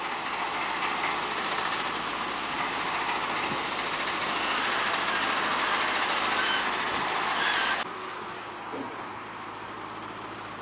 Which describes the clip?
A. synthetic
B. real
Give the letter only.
B